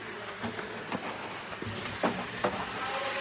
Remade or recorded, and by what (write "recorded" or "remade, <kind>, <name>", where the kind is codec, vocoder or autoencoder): recorded